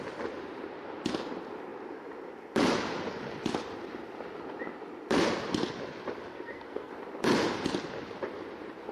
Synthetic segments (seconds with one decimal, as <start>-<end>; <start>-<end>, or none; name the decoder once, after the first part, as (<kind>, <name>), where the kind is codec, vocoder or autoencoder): 6.3-6.9 (codec, SNAC)